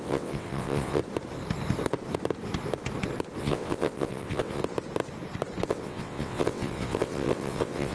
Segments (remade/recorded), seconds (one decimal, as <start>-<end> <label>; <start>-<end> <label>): 0.0-1.0 remade; 1.0-3.4 recorded; 3.4-4.6 remade; 4.6-5.7 recorded; 5.7-7.9 remade